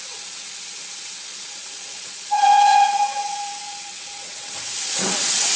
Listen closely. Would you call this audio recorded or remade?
remade